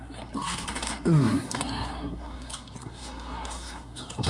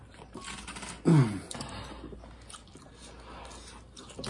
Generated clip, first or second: first